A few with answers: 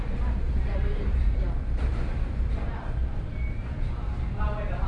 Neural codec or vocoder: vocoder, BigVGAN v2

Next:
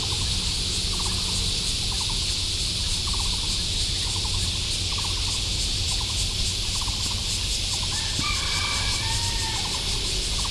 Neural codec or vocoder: none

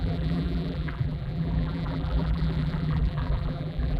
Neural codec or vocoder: vocoder, BigVGAN v2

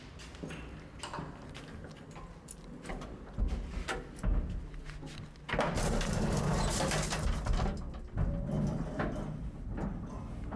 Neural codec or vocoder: none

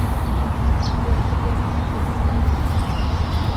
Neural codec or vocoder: vocoder, BigVGAN v2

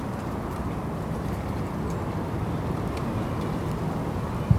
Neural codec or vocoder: none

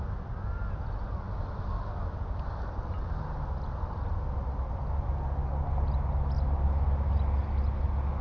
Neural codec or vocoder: none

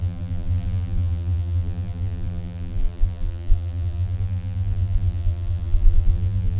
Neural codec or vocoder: vocoder, BigVGAN v2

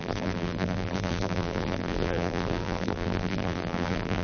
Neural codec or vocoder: vocoder, BigVGAN v2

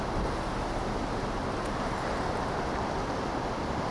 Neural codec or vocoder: vocoder, BigVGAN v2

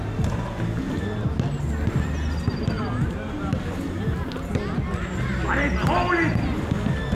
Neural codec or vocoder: none